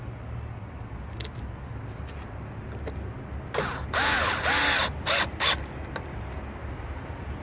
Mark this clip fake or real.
real